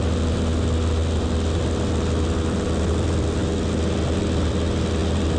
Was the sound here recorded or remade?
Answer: recorded